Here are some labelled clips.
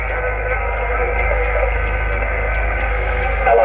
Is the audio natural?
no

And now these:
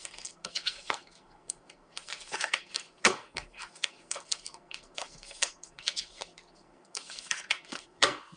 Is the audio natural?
no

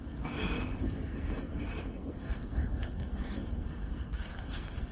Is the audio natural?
no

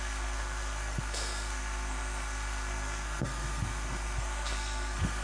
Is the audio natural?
no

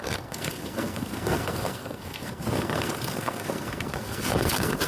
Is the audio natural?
no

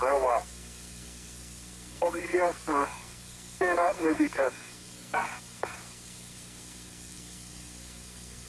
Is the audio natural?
no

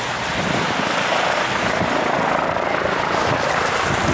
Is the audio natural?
yes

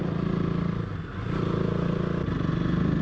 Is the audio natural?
yes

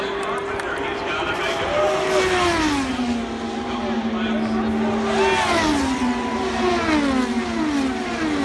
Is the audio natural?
yes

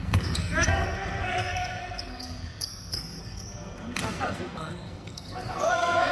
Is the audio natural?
no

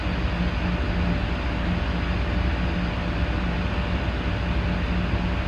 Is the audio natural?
yes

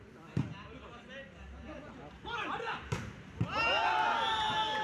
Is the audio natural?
yes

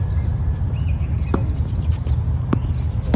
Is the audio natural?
yes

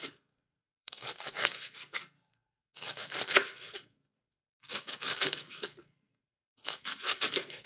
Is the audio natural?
no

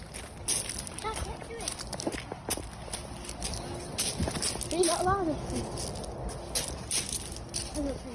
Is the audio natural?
yes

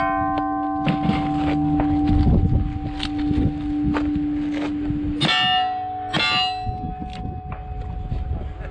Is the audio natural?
yes